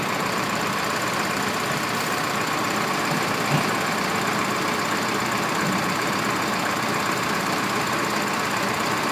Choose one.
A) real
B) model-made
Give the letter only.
B